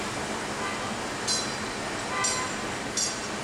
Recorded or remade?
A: recorded